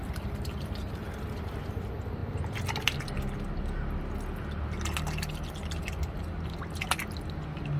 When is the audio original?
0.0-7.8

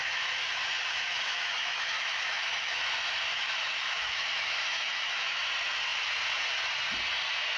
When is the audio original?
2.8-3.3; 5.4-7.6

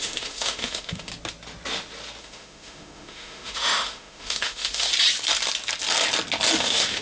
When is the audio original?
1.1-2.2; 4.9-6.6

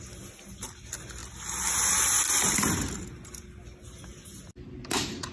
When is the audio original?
0.0-5.3

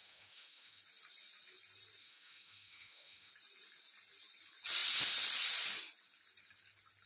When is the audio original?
0.8-2.0; 3.3-7.1